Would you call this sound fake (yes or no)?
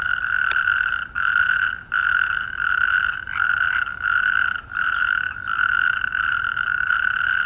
no